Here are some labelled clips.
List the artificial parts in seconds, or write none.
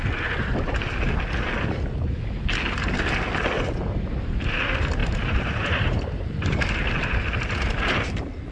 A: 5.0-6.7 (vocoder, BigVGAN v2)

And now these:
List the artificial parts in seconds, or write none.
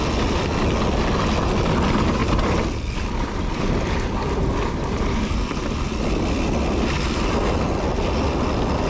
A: none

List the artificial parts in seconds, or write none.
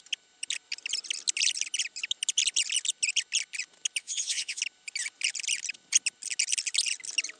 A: 4.0-4.6 (vocoder, Vocos)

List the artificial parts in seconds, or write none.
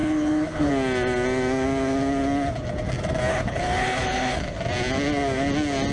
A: 0.0-0.7 (codec, HILCodec); 3.3-4.6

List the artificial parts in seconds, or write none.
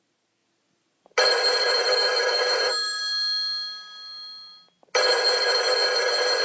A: 1.8-3.0 (autoencoder, DAC-VAE)